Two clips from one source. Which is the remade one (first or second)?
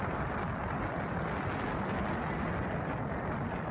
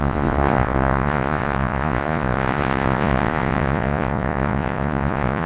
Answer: second